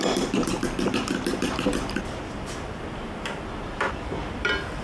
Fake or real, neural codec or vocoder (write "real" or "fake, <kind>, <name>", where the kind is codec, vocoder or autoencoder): fake, vocoder, BigVGAN v2